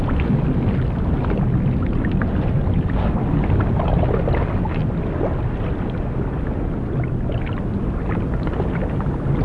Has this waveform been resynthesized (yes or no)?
no